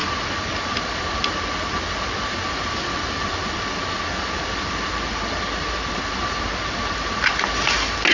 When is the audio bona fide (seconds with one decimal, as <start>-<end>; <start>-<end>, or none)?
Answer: 0.0-8.1